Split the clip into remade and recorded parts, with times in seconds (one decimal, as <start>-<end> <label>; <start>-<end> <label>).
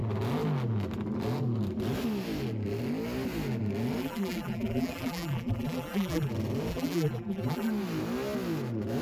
0.0-4.0 recorded; 4.0-6.3 remade; 6.3-6.7 recorded; 6.7-7.7 remade; 7.7-9.0 recorded